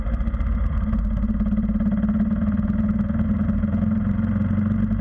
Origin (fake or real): real